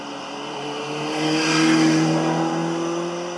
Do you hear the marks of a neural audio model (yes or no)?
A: no